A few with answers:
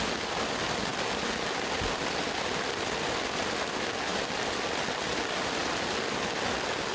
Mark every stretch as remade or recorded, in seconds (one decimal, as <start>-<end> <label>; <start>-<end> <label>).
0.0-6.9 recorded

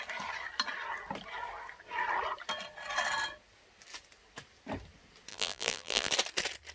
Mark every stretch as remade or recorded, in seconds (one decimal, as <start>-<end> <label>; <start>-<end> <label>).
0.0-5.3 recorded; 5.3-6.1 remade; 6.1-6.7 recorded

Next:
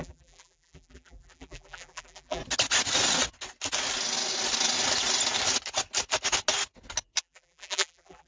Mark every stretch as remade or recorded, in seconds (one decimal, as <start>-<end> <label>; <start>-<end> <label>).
0.0-2.4 remade; 2.4-7.2 recorded; 7.2-8.3 remade

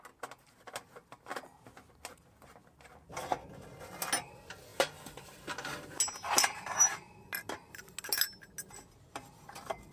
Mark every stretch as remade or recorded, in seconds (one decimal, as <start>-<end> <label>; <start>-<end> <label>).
0.0-9.9 recorded

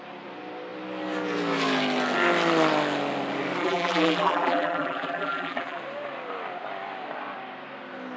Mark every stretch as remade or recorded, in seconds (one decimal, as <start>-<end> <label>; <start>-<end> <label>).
0.0-3.6 recorded; 3.6-5.8 remade; 5.8-8.2 recorded

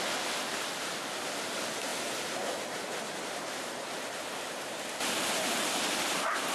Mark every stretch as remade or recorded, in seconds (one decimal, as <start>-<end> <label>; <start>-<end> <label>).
0.0-6.5 recorded